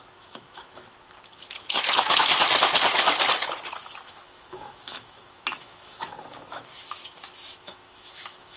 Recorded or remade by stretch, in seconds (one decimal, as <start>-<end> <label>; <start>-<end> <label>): 0.0-2.3 remade; 2.3-3.8 recorded; 3.8-8.6 remade